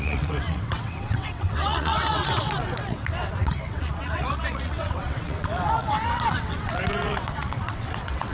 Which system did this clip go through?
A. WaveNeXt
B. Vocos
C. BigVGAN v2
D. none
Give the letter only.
A